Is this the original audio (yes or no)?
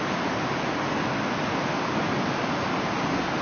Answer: yes